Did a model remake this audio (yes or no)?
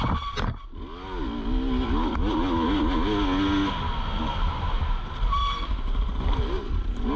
no